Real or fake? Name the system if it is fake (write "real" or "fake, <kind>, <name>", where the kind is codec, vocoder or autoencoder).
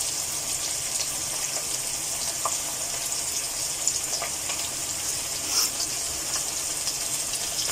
real